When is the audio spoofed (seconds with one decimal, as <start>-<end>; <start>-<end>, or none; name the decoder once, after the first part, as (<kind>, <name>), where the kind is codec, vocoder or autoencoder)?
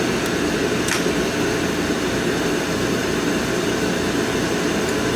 none